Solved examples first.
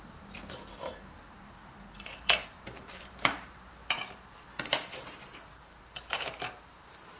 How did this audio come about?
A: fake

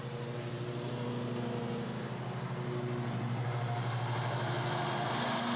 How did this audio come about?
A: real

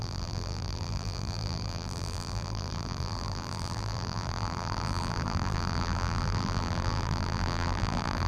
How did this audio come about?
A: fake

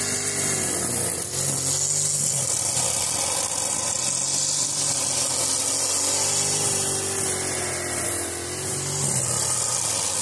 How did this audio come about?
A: real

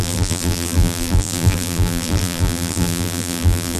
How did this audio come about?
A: fake